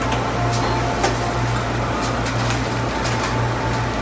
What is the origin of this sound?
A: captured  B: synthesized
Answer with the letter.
A